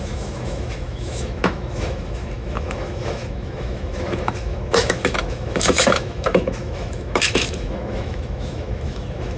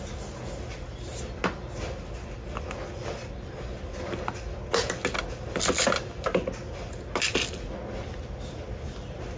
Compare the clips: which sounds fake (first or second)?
first